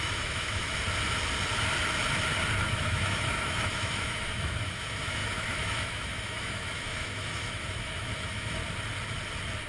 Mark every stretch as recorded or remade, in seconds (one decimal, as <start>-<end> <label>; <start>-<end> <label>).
0.0-0.7 remade; 0.7-2.6 recorded; 2.6-8.6 remade; 8.6-9.7 recorded